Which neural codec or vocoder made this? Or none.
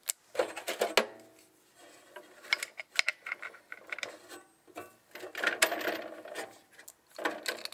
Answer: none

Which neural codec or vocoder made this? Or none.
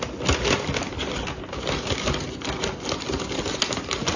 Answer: none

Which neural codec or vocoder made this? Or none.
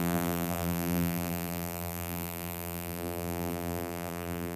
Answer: vocoder, BigVGAN v2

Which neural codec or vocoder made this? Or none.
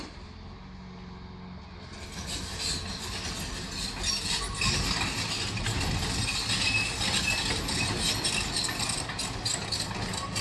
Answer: none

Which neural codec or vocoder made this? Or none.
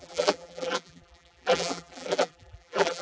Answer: vocoder, BigVGAN v2